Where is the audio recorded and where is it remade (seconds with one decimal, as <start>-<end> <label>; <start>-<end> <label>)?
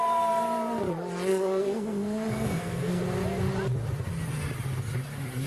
0.0-1.3 recorded; 1.3-3.0 remade; 3.0-5.5 recorded